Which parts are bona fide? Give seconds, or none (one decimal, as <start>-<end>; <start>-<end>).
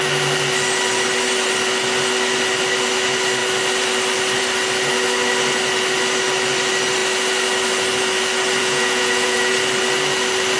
0.0-8.6; 9.5-10.6